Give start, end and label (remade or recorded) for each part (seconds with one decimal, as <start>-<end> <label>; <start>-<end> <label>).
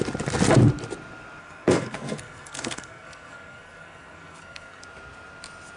0.0-1.4 recorded; 1.4-4.8 remade; 4.8-5.8 recorded